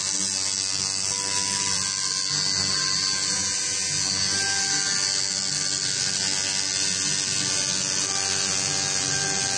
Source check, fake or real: real